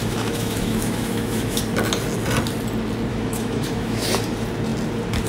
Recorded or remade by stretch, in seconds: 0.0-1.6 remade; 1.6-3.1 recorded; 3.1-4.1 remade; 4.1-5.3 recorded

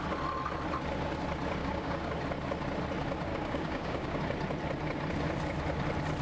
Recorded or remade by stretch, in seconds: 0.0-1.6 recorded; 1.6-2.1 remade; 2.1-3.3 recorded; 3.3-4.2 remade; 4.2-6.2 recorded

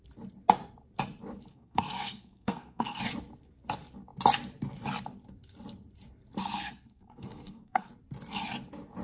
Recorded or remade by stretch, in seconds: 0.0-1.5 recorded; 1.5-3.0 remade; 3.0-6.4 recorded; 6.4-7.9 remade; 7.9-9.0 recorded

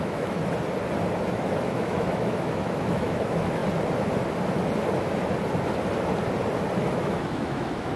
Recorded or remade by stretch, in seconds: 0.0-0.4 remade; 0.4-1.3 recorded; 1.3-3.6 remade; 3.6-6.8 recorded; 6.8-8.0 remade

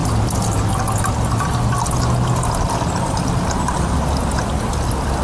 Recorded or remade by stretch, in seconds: 0.0-5.2 recorded